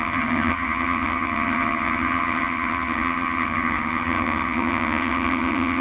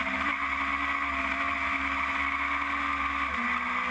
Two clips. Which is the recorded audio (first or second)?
second